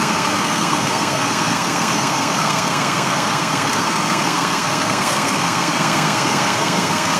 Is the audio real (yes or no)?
no